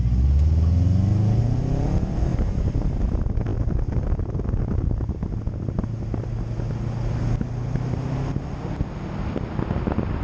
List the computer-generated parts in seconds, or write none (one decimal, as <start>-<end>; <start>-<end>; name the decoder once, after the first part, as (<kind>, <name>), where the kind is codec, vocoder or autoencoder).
2.3-2.9 (vocoder, BigVGAN v2)